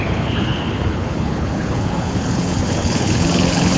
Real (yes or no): no